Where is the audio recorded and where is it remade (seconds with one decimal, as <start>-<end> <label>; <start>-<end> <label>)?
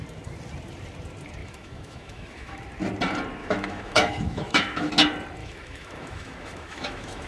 0.0-1.4 recorded; 1.4-2.6 remade; 2.6-3.4 recorded; 3.4-4.9 remade; 4.9-5.4 recorded; 5.4-7.3 remade